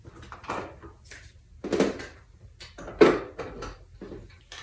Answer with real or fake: real